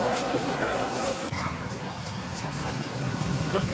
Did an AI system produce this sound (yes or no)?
yes